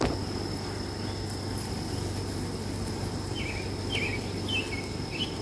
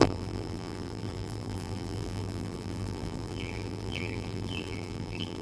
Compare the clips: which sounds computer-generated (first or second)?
second